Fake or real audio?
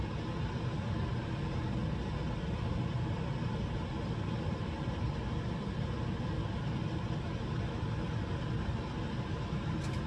real